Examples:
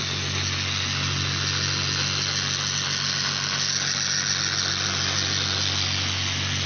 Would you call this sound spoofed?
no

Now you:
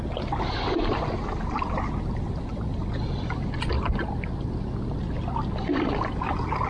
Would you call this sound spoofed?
no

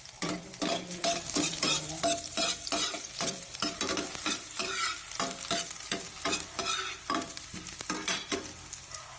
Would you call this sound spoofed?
yes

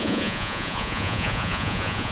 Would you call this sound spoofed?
yes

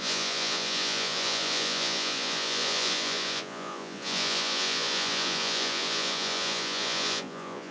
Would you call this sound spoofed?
yes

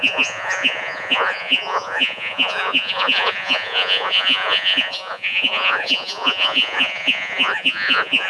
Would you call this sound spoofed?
yes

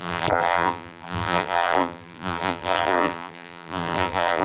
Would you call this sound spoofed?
yes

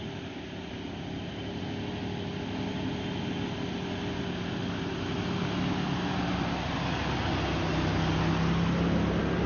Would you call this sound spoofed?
no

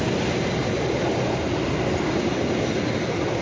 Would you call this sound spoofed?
no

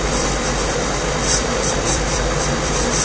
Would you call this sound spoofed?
yes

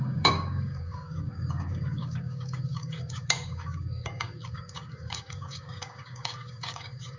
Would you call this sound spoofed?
yes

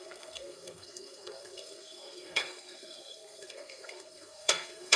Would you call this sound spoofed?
yes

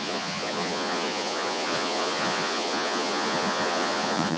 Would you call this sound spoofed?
yes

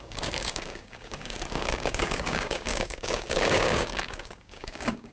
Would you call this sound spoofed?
yes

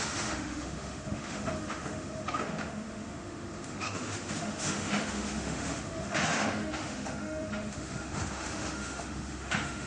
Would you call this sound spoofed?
yes